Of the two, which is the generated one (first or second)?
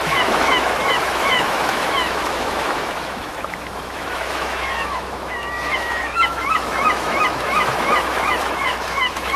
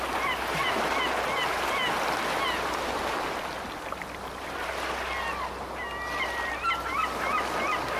first